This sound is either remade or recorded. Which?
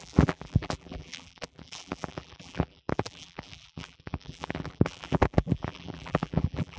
remade